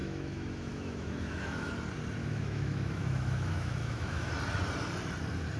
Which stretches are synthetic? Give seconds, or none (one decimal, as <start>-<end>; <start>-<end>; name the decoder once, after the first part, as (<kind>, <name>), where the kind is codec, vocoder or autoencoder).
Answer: 0.0-1.7 (autoencoder, DAC-VAE); 2.2-4.3